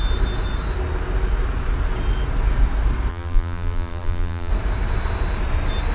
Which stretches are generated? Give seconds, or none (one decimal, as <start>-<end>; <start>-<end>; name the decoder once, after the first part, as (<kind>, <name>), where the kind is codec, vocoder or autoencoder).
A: 3.1-4.5 (vocoder, BigVGAN v2)

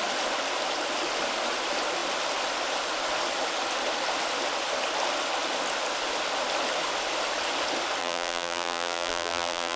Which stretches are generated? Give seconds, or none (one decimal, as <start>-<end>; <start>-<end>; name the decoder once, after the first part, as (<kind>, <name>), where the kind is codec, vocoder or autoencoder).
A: 8.0-9.8 (vocoder, BigVGAN v2)

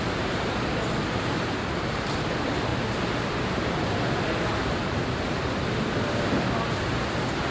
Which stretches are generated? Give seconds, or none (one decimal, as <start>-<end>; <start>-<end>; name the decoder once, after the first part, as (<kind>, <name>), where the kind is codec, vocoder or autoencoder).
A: none

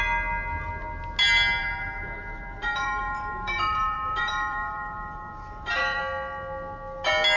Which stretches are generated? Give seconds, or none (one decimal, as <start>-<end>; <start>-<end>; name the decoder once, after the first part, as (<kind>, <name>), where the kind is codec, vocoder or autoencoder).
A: 1.6-6.0 (vocoder, BigVGAN v2)

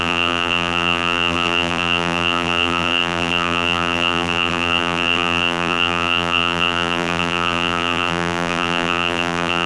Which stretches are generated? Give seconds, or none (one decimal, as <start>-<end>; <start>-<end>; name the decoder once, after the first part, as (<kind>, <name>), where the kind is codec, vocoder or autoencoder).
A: 0.0-9.7 (vocoder, BigVGAN v2)

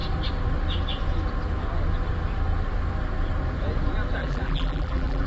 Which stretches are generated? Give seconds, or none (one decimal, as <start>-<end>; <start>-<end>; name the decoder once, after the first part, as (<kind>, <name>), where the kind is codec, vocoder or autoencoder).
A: 4.2-5.3 (vocoder, BigVGAN v2)